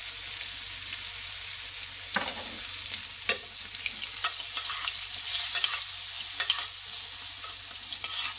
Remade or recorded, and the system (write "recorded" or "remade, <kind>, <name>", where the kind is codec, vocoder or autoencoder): recorded